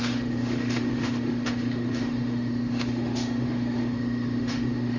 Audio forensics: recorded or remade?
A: remade